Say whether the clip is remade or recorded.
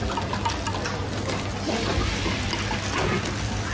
recorded